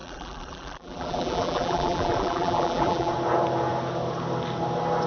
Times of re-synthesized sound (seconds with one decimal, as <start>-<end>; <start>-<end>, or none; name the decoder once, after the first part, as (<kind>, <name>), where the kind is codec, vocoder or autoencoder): 0.0-3.1 (vocoder, BigVGAN v2)